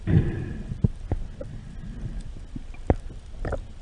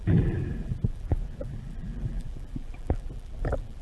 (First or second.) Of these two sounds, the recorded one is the first